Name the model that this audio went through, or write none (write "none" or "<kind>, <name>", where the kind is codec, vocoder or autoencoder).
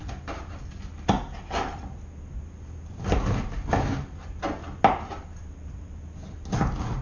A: none